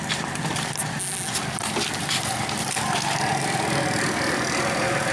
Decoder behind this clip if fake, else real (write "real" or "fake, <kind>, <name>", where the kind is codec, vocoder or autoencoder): real